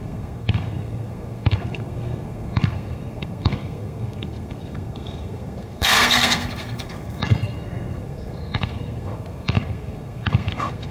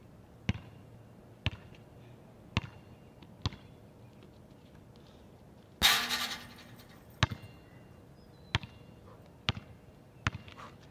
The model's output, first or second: first